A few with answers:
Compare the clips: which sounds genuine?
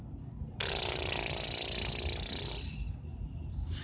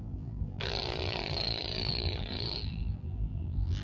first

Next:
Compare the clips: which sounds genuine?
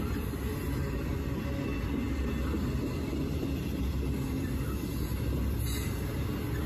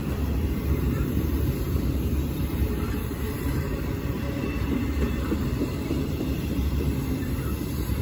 first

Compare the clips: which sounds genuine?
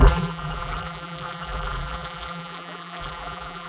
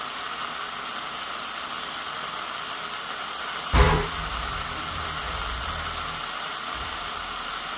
second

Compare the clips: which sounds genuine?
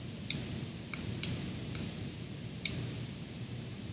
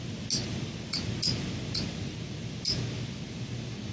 second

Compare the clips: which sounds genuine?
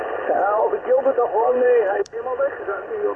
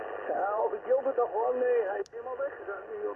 second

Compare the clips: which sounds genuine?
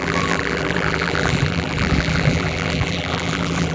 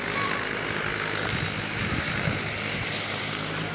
second